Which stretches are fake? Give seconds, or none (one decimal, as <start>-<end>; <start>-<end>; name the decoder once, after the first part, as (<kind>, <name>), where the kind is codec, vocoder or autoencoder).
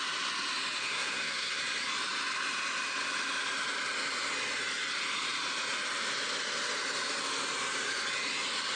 0.8-1.6 (codec, SNAC)